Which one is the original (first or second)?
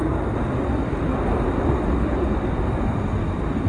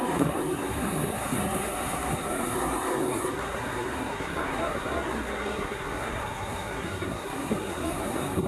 first